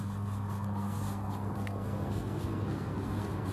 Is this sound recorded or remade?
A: remade